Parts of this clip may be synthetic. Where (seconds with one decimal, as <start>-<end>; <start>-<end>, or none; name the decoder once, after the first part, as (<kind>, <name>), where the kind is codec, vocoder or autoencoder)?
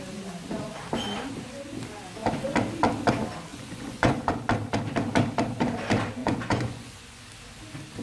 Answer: 3.5-4.3 (vocoder, Vocos); 6.2-7.2